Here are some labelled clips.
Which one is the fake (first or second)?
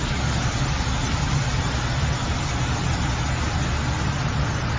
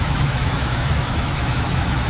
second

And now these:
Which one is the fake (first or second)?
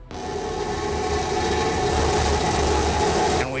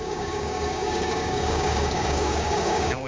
second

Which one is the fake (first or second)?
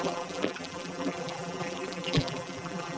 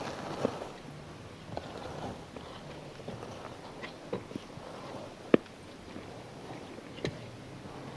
first